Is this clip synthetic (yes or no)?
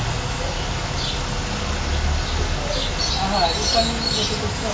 no